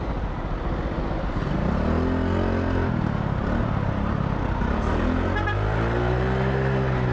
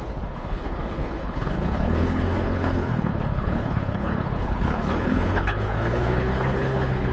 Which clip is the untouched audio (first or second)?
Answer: first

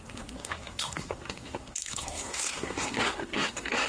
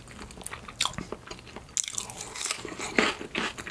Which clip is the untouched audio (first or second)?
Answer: second